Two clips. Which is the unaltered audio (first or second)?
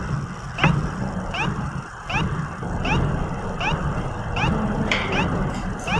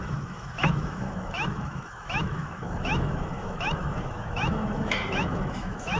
first